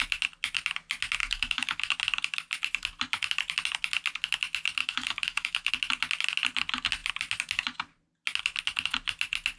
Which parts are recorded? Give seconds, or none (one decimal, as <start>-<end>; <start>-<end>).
0.0-1.2; 1.9-4.8; 5.7-9.6